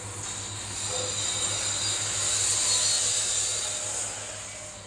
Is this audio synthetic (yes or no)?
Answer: no